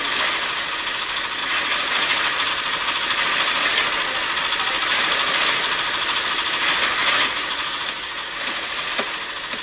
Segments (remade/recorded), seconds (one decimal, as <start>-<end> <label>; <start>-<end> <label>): 0.0-1.4 recorded; 1.4-2.5 remade; 2.5-7.0 recorded; 7.0-8.9 remade; 8.9-9.6 recorded